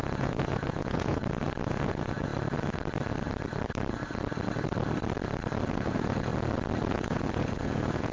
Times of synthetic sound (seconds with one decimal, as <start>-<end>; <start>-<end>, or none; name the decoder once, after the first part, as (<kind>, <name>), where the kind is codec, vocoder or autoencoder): 0.0-1.2 (vocoder, Vocos); 1.7-2.3; 5.7-6.3; 6.9-8.1